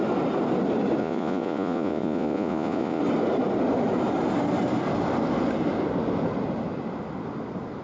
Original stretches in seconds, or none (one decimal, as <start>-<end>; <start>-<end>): 0.0-1.0; 3.0-7.8